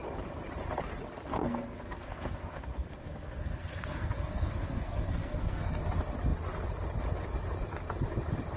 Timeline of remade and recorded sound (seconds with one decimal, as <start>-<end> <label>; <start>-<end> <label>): 0.0-1.4 recorded; 1.4-5.8 remade; 5.8-8.6 recorded